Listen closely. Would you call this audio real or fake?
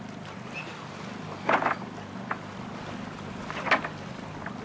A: real